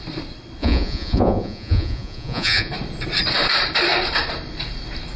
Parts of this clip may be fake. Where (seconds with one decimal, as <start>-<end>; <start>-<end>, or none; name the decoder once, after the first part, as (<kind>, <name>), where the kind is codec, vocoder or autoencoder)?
0.6-2.7 (vocoder, Vocos)